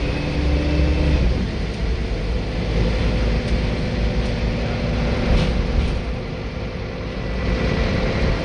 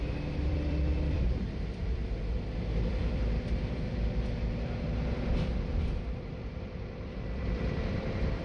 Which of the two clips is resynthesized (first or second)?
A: second